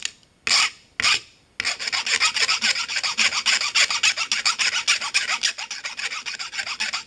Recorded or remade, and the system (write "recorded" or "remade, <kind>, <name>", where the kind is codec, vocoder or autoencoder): recorded